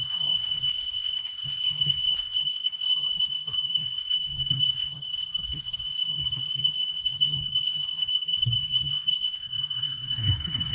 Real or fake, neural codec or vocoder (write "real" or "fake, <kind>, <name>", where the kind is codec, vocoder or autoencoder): fake, codec, SNAC